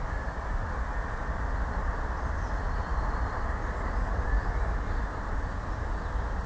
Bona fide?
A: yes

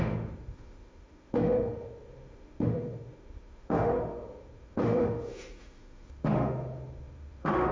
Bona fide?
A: no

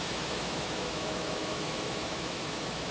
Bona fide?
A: no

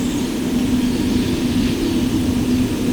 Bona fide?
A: yes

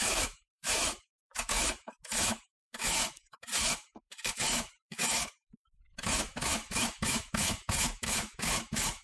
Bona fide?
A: no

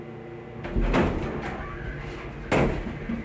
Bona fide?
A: yes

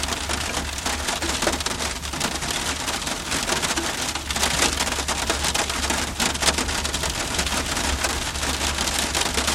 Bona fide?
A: yes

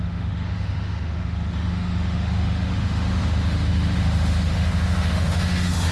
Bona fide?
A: no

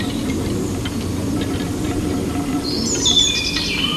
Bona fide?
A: yes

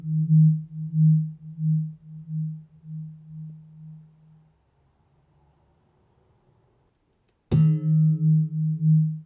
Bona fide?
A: yes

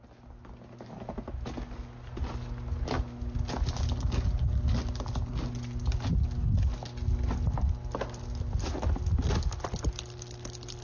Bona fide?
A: yes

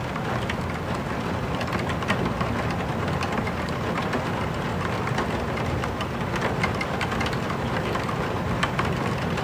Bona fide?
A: yes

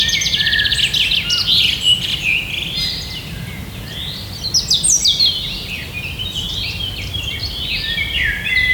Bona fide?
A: yes